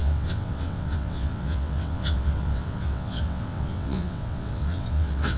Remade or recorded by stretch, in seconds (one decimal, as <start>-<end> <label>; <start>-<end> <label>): 0.0-5.4 remade